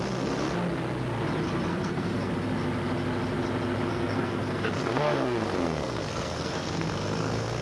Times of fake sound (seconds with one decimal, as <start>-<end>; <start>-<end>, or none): 1.7-2.3; 3.9-7.6